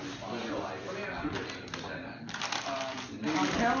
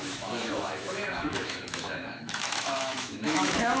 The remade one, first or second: second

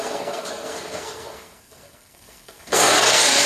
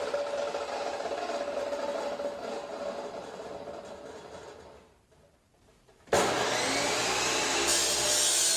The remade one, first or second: first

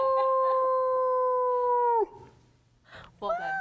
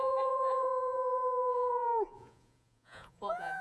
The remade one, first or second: second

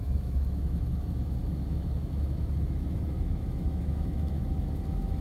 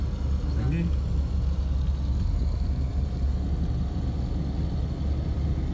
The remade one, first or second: first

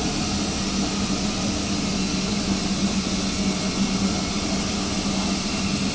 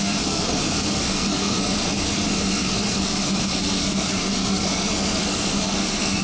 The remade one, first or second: second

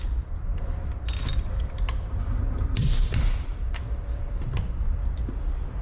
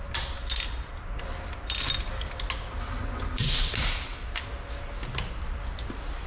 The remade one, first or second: first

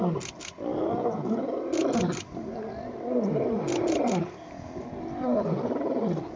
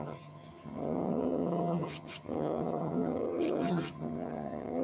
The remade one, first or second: second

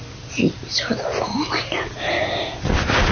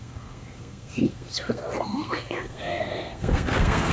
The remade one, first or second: second